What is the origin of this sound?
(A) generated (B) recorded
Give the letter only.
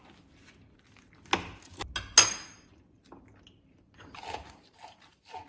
B